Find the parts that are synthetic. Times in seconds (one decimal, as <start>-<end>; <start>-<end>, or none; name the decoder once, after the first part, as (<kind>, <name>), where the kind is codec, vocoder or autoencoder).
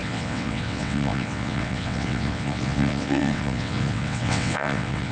0.0-5.1 (vocoder, WaveNeXt)